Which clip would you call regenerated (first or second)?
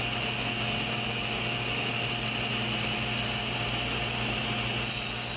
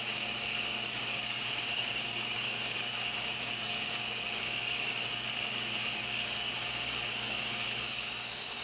second